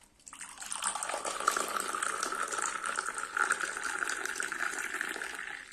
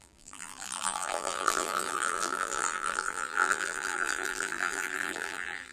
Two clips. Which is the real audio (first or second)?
first